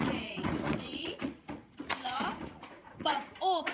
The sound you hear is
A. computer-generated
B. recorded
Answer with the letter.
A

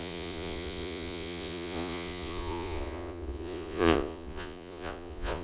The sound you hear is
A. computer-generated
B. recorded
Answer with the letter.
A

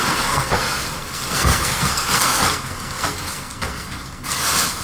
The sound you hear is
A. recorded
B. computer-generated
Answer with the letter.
B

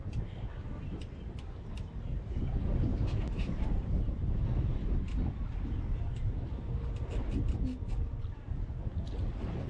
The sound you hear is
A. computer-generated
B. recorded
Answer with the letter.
B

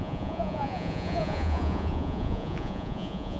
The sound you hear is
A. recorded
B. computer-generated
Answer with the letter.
B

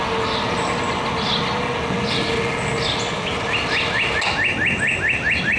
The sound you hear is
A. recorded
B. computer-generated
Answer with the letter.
A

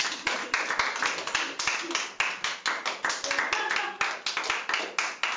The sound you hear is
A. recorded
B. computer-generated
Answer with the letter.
A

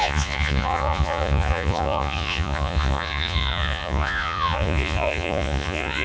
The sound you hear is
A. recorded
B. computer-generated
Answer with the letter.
B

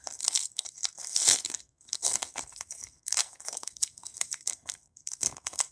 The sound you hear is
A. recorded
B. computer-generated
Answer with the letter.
B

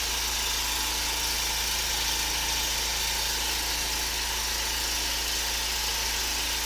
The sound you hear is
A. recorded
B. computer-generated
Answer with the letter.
A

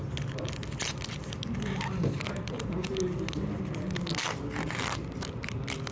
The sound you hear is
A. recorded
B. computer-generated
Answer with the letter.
A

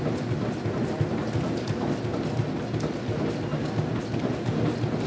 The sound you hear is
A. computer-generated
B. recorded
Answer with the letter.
B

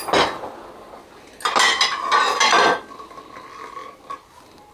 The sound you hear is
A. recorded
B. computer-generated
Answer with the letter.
A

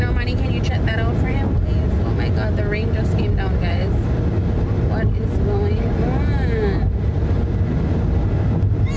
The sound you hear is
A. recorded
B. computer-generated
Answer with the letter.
A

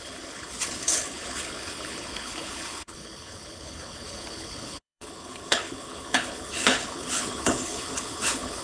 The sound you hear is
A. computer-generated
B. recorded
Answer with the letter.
A